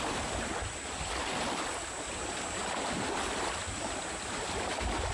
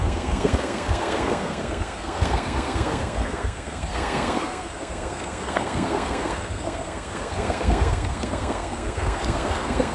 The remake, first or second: second